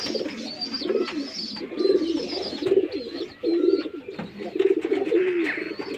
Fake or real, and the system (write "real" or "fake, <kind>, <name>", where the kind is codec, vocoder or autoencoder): real